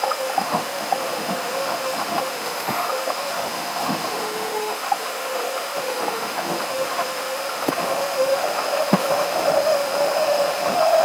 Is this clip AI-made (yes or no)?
yes